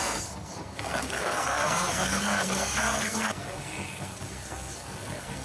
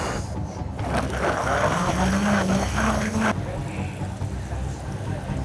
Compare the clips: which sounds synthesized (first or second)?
first